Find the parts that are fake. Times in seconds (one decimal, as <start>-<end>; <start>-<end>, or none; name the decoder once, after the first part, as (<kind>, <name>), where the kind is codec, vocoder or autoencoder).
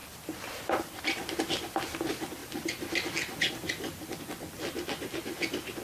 none